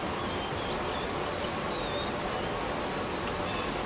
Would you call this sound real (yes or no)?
yes